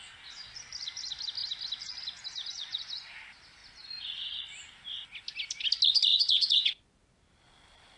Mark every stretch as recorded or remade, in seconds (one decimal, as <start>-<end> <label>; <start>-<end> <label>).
0.0-2.5 recorded; 2.5-3.1 remade; 3.1-6.1 recorded; 6.1-7.0 remade; 7.0-8.0 recorded

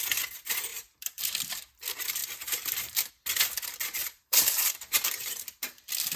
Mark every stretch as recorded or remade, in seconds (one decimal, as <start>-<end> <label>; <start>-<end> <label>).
0.0-0.7 recorded; 0.7-1.2 remade; 1.2-4.0 recorded; 4.0-5.4 remade; 5.4-6.2 recorded

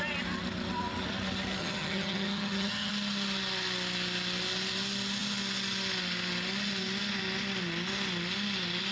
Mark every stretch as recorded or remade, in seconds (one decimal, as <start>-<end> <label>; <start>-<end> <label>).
0.0-1.6 recorded; 1.6-2.9 remade; 2.9-8.9 recorded

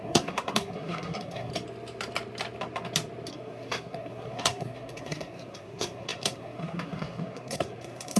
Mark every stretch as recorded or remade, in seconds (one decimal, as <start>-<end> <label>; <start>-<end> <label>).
0.0-1.5 remade; 1.5-3.3 recorded; 3.3-8.2 remade

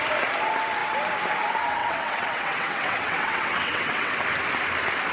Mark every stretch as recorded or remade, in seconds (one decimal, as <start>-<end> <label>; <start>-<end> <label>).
0.0-1.8 recorded; 1.8-4.2 remade; 4.2-5.1 recorded

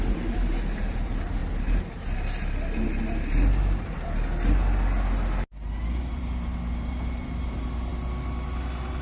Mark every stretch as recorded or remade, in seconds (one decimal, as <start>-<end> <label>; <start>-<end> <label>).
0.0-1.4 remade; 1.4-6.1 recorded; 6.1-7.9 remade; 7.9-9.0 recorded

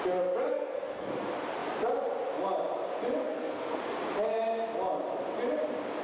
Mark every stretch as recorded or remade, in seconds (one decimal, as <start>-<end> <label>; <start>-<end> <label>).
0.0-0.5 recorded; 0.5-1.1 remade; 1.1-3.2 recorded; 3.2-3.8 remade; 3.8-6.0 recorded

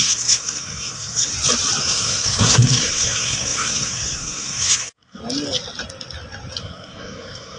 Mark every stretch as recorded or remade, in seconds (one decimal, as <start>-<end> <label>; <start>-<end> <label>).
0.0-1.3 remade; 1.3-1.8 recorded; 1.8-5.2 remade; 5.2-6.6 recorded; 6.6-7.6 remade